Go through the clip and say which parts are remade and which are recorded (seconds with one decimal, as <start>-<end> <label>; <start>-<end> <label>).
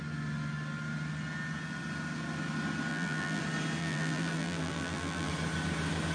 0.0-2.9 recorded; 2.9-3.4 remade; 3.4-3.8 recorded; 3.8-5.3 remade; 5.3-6.1 recorded